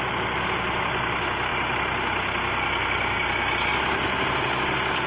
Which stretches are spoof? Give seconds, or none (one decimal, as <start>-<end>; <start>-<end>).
none